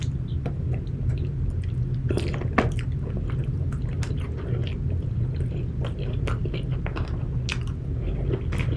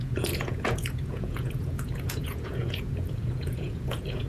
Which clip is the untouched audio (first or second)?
first